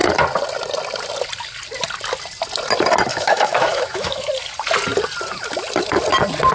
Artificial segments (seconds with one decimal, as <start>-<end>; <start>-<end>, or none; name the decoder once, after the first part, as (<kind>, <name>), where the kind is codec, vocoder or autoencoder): 3.1-4.3 (autoencoder, DAC-VAE)